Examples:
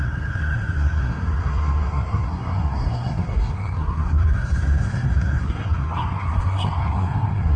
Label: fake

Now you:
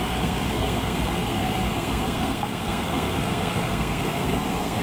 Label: fake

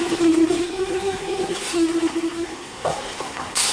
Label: fake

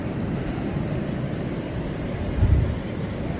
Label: real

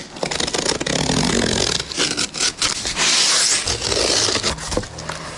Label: real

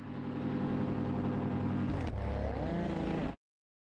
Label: real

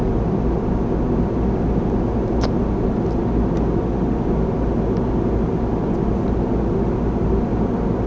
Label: real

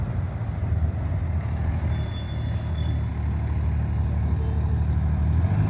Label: real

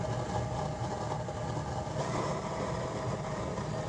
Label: real